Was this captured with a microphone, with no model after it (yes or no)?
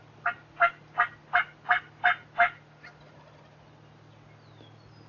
yes